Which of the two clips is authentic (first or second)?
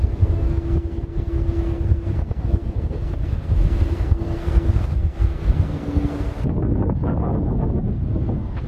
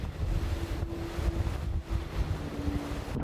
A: second